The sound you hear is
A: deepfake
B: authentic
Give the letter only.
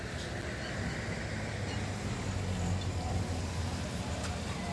B